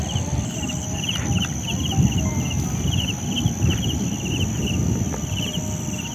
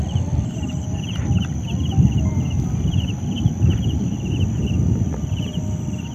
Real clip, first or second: first